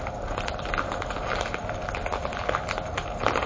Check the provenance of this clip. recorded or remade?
recorded